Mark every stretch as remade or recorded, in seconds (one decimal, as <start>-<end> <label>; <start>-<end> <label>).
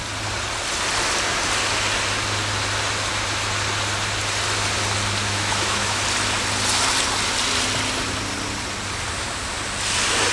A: 0.0-5.2 recorded; 5.2-6.0 remade; 6.0-10.3 recorded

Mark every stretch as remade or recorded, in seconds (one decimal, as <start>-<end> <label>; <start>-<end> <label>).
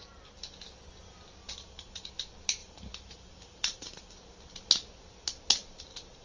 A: 0.0-1.4 recorded; 1.4-2.1 remade; 2.1-2.6 recorded; 2.6-4.1 remade; 4.1-6.2 recorded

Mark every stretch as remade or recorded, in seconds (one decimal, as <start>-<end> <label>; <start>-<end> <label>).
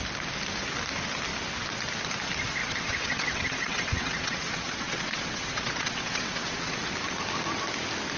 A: 0.0-2.6 recorded; 2.6-6.9 remade; 6.9-8.2 recorded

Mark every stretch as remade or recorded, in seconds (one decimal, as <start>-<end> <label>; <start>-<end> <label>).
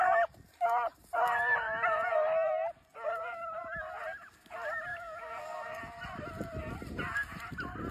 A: 0.0-4.9 recorded; 4.9-5.8 remade; 5.8-7.9 recorded